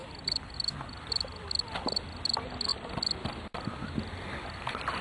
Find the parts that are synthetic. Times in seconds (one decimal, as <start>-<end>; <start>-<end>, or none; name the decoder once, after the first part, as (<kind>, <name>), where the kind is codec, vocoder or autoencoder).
0.0-1.1 (vocoder, BigVGAN v2)